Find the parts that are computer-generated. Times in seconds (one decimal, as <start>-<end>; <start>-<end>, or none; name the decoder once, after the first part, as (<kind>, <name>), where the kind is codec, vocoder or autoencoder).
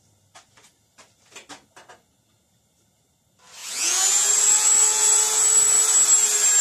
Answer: 3.6-5.8 (vocoder, Vocos)